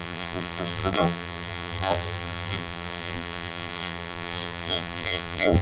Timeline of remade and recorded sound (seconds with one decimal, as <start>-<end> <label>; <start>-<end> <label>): 0.0-5.6 remade